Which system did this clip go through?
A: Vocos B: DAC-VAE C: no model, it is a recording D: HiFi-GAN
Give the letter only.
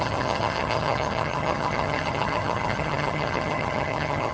D